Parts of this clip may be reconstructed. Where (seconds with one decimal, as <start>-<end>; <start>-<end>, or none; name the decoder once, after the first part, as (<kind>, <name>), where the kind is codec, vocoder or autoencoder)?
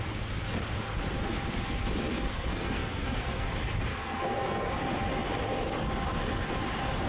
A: 2.3-3.5 (codec, SNAC); 3.9-4.7